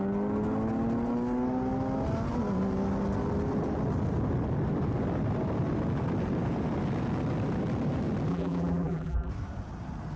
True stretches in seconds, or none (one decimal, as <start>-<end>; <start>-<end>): 0.0-8.3; 9.3-10.2